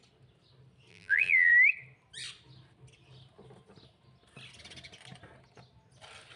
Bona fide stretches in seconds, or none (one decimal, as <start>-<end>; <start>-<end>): 0.0-0.9; 1.5-6.4